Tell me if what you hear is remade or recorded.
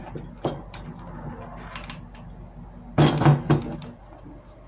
recorded